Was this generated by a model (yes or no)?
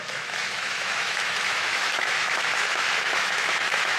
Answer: yes